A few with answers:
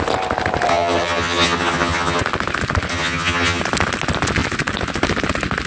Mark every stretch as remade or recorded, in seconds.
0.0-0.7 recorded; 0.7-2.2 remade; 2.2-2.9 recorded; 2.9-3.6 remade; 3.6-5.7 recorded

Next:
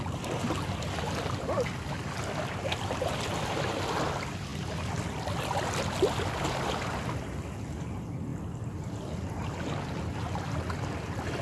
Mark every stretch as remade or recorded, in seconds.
0.0-11.4 recorded

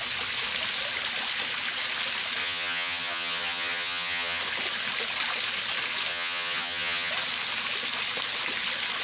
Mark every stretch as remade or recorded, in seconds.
0.0-2.4 recorded; 2.4-4.4 remade; 4.4-6.1 recorded; 6.1-7.1 remade; 7.1-9.0 recorded